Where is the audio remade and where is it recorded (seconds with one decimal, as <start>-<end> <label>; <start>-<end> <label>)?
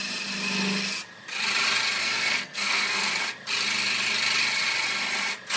0.0-2.0 recorded; 2.0-3.1 remade; 3.1-5.6 recorded